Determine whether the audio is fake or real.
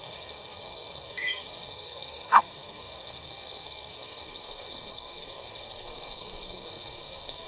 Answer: fake